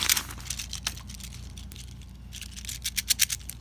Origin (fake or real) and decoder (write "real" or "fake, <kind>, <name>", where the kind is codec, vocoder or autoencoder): real